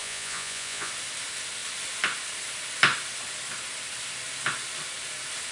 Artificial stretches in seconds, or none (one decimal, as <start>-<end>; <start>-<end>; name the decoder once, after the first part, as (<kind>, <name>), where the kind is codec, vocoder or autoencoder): 0.0-0.9 (vocoder, Vocos)